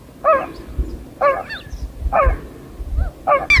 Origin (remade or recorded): recorded